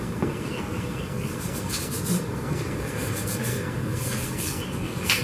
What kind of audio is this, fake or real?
fake